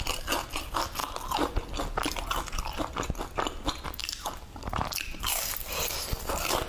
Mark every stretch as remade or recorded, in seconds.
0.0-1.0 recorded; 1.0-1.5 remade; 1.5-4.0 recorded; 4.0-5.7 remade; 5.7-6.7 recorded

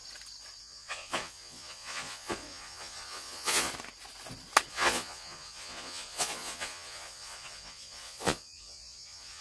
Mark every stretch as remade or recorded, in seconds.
0.0-0.6 recorded; 0.6-3.7 remade; 3.7-4.7 recorded; 4.7-9.4 remade

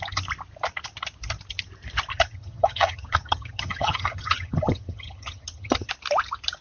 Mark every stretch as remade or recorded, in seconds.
0.0-2.1 recorded; 2.1-5.9 remade; 5.9-6.6 recorded

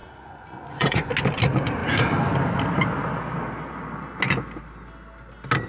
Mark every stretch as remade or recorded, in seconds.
0.0-1.1 remade; 1.1-5.7 recorded

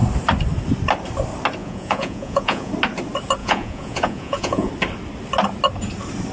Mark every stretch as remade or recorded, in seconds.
0.0-1.6 recorded; 1.6-2.7 remade; 2.7-3.4 recorded; 3.4-4.7 remade; 4.7-6.3 recorded